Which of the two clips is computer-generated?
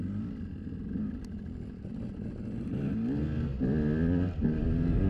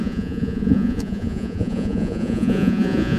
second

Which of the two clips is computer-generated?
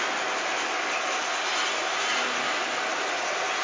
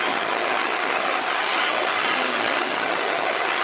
second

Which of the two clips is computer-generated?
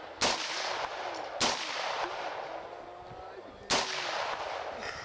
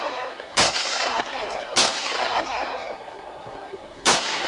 second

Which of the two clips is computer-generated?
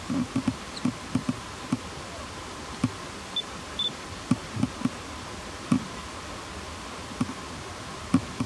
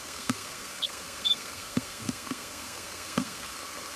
second